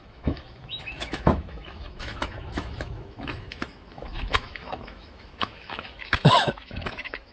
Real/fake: fake